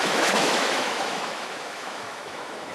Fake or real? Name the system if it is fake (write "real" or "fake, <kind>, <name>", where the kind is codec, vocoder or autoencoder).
fake, autoencoder, DAC-VAE